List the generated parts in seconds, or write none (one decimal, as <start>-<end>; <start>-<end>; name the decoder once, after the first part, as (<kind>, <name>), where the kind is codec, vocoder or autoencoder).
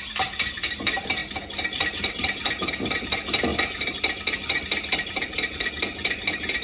0.0-1.2 (vocoder, BigVGAN v2); 2.1-3.5; 4.9-6.6